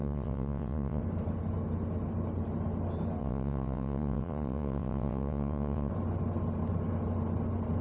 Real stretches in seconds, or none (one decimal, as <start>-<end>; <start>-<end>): 1.0-3.2; 5.9-7.8